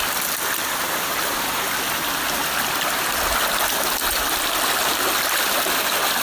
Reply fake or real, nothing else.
real